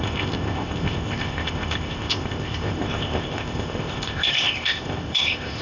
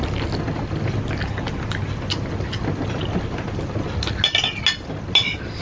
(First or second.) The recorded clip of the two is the second